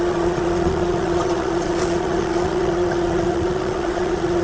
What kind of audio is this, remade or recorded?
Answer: remade